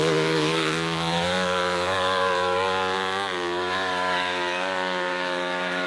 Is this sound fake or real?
fake